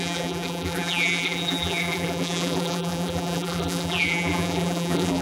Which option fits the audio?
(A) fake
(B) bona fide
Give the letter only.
A